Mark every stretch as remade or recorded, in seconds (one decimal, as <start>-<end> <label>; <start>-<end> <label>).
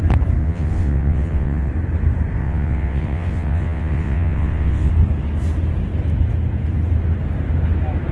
0.0-0.4 recorded; 0.4-1.7 remade; 1.7-2.4 recorded; 2.4-4.9 remade; 4.9-8.1 recorded